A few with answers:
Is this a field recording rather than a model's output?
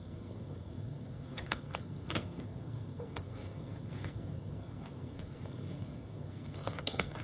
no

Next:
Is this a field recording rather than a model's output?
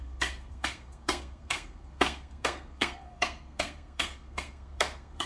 no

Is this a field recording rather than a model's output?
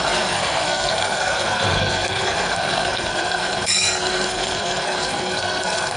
no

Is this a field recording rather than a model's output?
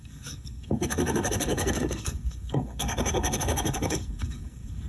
no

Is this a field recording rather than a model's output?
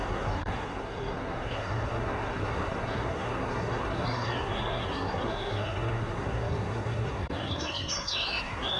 no